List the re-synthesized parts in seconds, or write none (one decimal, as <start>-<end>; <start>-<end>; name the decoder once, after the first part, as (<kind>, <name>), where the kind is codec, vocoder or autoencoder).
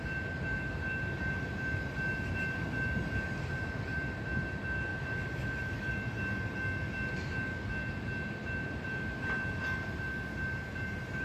4.9-5.9 (autoencoder, DAC-VAE)